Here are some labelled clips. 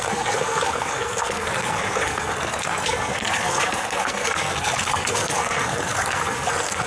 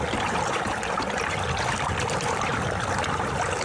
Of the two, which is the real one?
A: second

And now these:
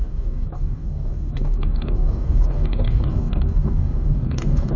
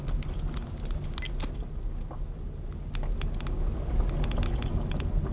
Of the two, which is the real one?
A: second